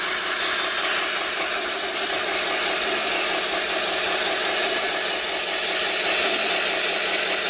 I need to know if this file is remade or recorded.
recorded